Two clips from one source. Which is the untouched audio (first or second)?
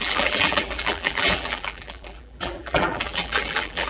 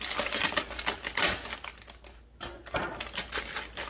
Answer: second